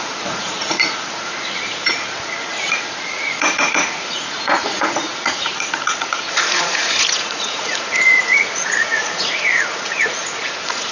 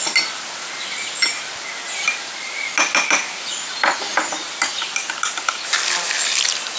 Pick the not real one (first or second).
first